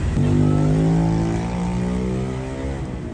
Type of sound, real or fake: real